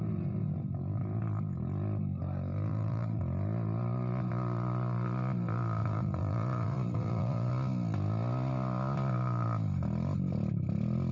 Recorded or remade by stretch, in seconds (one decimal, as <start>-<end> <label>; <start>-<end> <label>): 0.0-2.7 recorded; 2.7-3.2 remade; 3.2-5.8 recorded; 5.8-7.5 remade; 7.5-11.1 recorded